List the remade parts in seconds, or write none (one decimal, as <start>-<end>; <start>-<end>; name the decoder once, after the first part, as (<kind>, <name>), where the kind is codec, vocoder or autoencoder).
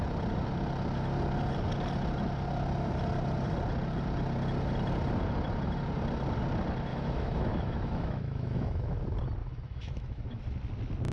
6.9-9.0 (autoencoder, DAC-VAE); 9.4-10.4